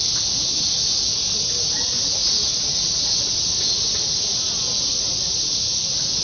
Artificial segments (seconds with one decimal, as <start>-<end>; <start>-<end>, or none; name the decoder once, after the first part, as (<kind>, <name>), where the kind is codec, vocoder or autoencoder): none

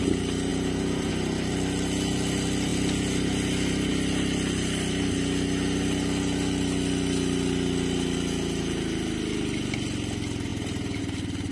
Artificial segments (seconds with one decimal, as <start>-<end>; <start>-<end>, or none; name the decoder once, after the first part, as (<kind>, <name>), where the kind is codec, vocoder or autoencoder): 0.5-1.1 (vocoder, BigVGAN v2); 10.5-11.0